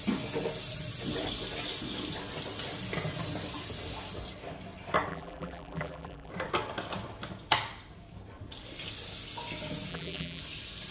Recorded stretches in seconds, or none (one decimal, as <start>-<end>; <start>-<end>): 0.0-5.1; 6.3-9.9; 10.4-10.9